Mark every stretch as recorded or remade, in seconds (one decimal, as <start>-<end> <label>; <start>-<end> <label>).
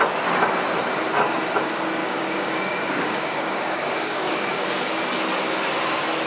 0.0-2.0 recorded; 2.0-5.0 remade; 5.0-6.3 recorded